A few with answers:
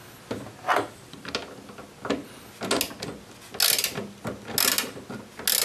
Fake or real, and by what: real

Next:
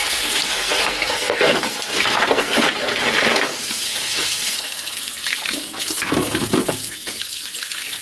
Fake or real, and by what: fake, codec, SNAC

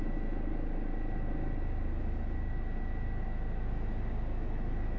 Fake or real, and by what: real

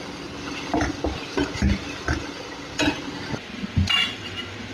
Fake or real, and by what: real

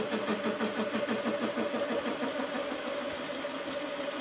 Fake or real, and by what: real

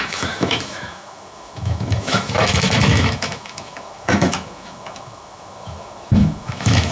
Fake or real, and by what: fake, autoencoder, DAC-VAE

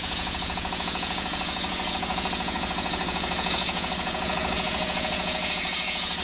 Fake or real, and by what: fake, vocoder, Vocos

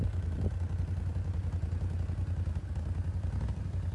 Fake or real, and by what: real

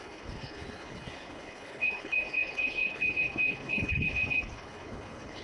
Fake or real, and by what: fake, codec, HILCodec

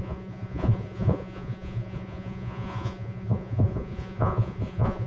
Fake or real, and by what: fake, vocoder, Vocos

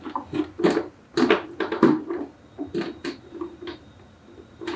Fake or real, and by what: real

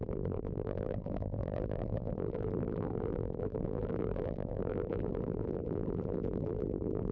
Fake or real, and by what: fake, vocoder, BigVGAN v2